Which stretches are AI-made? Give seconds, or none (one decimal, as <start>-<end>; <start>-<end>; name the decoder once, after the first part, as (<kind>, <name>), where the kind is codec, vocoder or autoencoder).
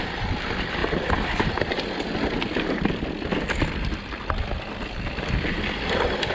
none